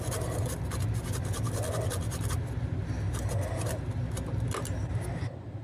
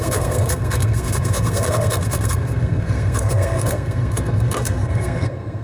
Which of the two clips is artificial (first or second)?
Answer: second